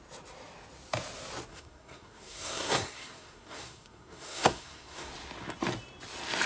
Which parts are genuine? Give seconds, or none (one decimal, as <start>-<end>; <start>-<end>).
0.0-1.5; 5.1-6.5